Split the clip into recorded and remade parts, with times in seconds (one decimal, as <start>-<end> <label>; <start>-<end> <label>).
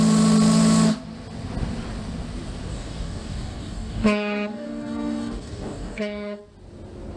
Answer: 0.0-2.7 recorded; 2.7-6.4 remade; 6.4-7.2 recorded